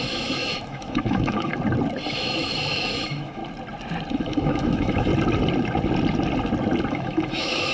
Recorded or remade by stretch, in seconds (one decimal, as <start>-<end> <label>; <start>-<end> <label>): 0.0-1.5 remade; 1.5-2.1 recorded; 2.1-3.4 remade; 3.4-4.1 recorded; 4.1-5.1 remade; 5.1-6.9 recorded; 6.9-7.7 remade